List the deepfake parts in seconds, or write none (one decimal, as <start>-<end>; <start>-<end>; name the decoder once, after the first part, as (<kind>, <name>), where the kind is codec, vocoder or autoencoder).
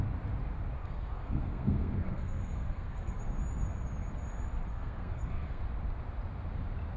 0.8-3.2 (codec, SNAC); 4.7-5.6